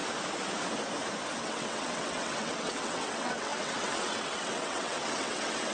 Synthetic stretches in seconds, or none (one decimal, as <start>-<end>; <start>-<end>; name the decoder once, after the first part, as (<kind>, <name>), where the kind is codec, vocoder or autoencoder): 1.4-5.7 (vocoder, WaveNeXt)